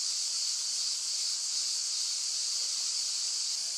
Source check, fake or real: real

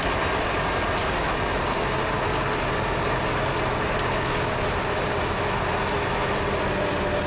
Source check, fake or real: real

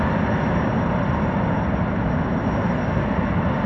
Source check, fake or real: real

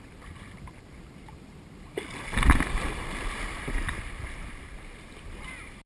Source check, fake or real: fake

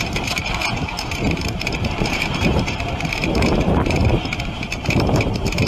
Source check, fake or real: fake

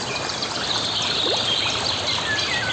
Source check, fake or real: fake